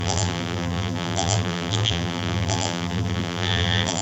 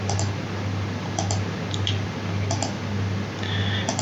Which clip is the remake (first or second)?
first